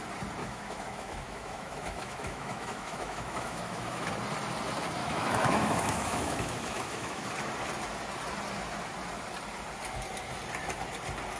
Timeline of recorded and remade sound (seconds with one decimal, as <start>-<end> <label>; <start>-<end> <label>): 0.0-0.4 recorded; 0.4-4.1 remade; 4.1-5.0 recorded; 5.0-7.3 remade; 7.3-11.4 recorded